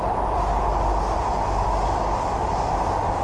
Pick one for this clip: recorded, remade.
recorded